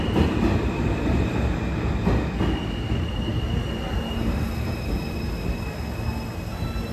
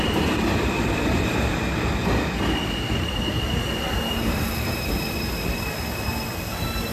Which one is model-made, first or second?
second